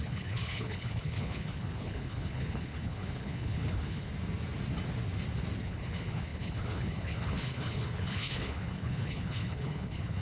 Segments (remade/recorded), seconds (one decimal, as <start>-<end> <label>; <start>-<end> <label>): 0.0-4.1 remade; 4.1-5.6 recorded; 5.6-10.2 remade